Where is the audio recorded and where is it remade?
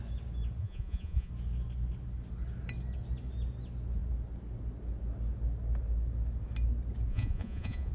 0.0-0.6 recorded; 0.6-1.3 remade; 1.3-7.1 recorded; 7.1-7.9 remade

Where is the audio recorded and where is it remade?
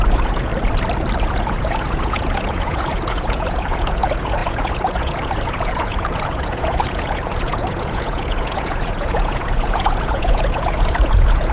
0.0-0.5 remade; 0.5-1.2 recorded; 1.2-11.5 remade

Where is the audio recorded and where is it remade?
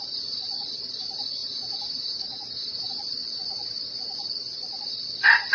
0.0-1.4 recorded; 1.4-2.9 remade; 2.9-5.5 recorded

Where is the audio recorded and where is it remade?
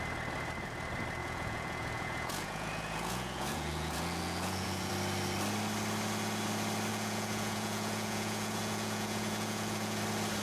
0.0-1.2 recorded; 1.2-4.9 remade; 4.9-6.9 recorded; 6.9-10.0 remade; 10.0-10.4 recorded